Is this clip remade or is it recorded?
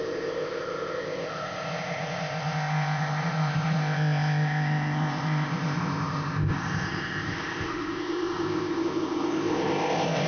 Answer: remade